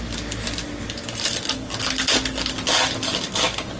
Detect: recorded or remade recorded